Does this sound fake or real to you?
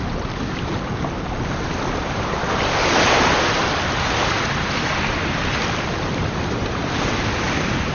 real